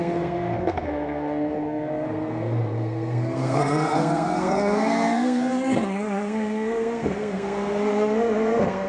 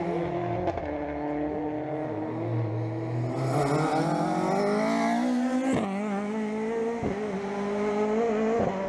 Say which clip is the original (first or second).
second